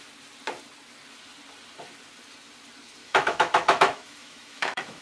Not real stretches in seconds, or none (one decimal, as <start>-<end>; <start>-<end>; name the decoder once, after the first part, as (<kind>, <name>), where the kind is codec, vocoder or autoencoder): 3.0-5.0 (autoencoder, DAC-VAE)